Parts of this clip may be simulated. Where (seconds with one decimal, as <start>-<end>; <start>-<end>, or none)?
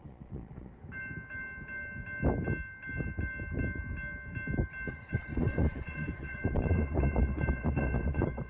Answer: 0.0-0.7; 4.9-8.5